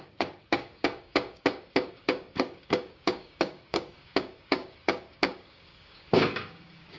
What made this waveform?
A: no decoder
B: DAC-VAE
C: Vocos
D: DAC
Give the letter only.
D